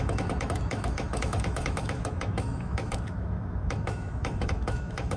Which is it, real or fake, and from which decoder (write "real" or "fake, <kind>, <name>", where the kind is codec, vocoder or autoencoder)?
fake, autoencoder, DAC-VAE